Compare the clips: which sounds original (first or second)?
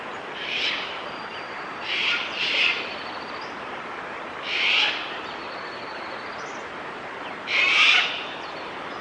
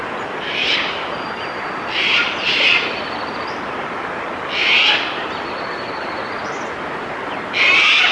second